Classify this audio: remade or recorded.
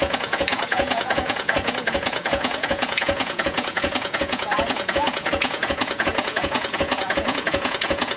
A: remade